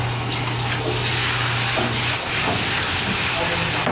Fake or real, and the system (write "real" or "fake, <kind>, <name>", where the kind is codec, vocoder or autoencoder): real